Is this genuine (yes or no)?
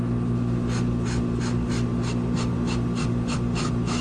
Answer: yes